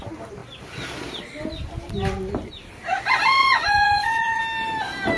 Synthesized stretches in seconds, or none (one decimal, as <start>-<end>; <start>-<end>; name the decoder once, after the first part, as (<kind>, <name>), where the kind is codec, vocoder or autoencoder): 3.4-4.4 (vocoder, Vocos)